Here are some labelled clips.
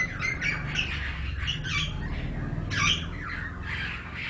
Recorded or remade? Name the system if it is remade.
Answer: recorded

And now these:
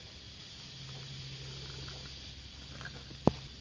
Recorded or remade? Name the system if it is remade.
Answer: recorded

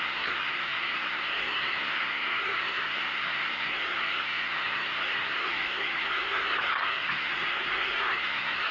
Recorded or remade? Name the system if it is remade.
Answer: remade, codec, SNAC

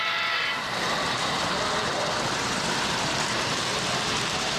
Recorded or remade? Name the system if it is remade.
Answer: remade, vocoder, BigVGAN v2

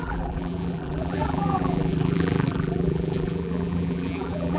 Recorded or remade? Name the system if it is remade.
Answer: remade, vocoder, BigVGAN v2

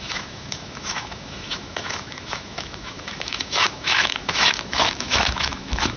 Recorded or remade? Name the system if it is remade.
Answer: remade, autoencoder, DAC-VAE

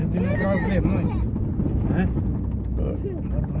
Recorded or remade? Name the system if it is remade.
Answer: recorded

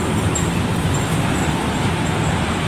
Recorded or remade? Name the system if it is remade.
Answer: recorded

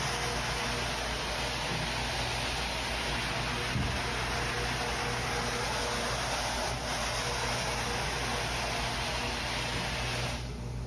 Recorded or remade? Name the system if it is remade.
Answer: recorded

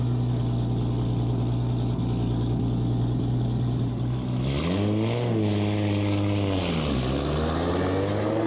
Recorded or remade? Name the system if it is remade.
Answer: recorded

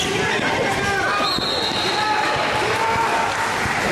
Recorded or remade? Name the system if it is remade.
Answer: recorded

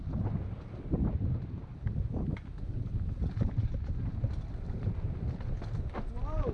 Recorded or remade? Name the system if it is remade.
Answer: recorded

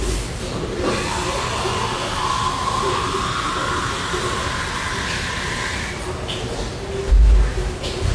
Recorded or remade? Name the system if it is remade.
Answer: recorded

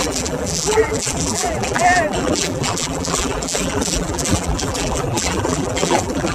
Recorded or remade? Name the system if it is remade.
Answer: remade, vocoder, BigVGAN v2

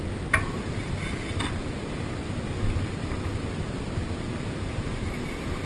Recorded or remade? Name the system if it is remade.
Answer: recorded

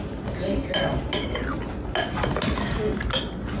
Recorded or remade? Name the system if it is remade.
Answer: recorded